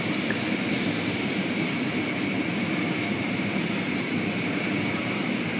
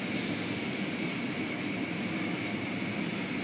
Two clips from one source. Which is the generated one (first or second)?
first